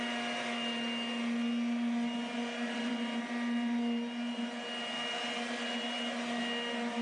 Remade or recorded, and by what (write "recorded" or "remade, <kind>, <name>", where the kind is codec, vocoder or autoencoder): recorded